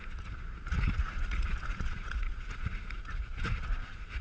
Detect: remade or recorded remade